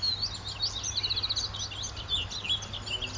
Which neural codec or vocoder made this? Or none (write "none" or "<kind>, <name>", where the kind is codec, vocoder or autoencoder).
none